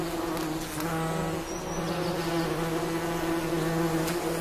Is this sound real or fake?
real